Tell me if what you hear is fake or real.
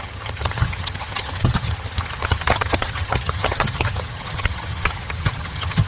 fake